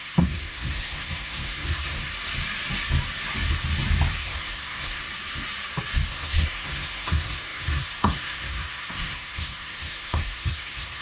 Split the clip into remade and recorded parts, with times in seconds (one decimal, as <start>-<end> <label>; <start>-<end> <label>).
0.0-2.1 remade; 2.1-4.2 recorded; 4.2-5.0 remade; 5.0-6.1 recorded; 6.1-11.0 remade